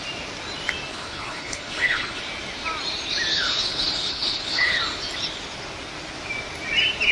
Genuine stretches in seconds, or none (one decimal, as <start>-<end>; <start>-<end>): 0.0-0.9; 2.2-3.3; 4.8-7.1